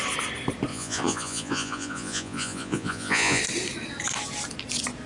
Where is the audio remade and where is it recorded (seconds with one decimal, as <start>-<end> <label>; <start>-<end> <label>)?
0.0-0.7 recorded; 0.7-3.4 remade; 3.4-5.1 recorded